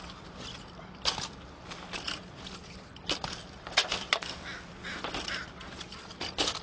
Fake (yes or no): no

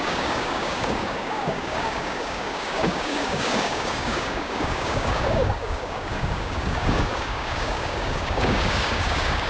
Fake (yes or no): yes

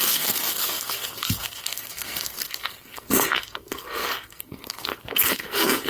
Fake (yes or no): yes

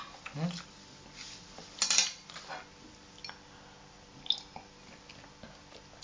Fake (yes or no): no